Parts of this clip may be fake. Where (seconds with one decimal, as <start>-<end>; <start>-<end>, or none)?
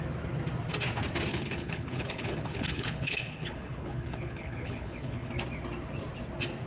1.3-5.3